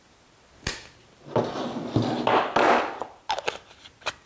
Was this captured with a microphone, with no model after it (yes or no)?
yes